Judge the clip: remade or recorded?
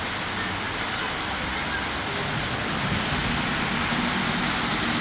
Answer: recorded